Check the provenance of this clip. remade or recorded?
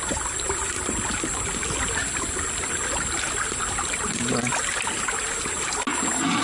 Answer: recorded